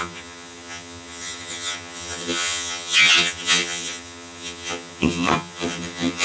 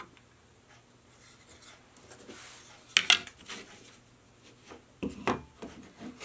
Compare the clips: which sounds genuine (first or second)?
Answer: second